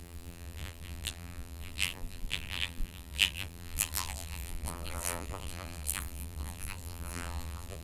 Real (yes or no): no